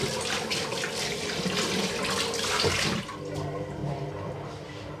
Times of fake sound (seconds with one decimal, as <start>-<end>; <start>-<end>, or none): 3.0-3.8